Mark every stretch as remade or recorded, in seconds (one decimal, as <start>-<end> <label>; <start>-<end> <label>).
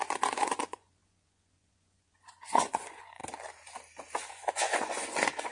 0.0-3.2 remade; 3.2-4.3 recorded; 4.3-5.5 remade